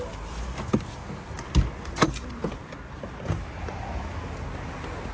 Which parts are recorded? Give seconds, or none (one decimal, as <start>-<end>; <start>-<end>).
0.0-5.1